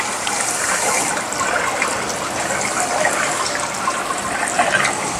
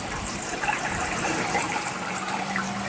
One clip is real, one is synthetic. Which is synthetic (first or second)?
second